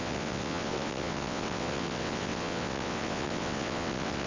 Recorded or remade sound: remade